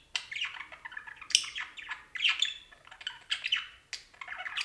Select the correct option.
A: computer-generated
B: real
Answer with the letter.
B